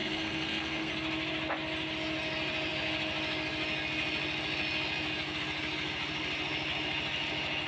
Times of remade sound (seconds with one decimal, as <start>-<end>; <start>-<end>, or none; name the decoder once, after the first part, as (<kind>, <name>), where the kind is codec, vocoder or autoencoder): 0.0-0.9 (codec, SNAC)